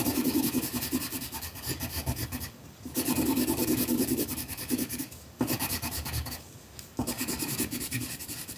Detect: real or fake fake